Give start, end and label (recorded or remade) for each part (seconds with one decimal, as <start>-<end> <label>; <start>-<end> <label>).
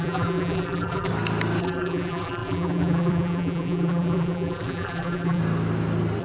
0.0-1.1 remade; 1.1-1.6 recorded; 1.6-5.4 remade; 5.4-6.2 recorded